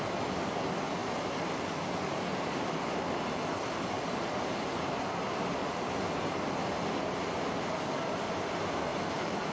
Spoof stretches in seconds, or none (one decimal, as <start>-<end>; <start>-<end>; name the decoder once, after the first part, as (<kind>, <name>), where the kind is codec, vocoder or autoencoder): 1.0-5.0 (vocoder, BigVGAN v2); 5.6-6.2; 8.9-9.5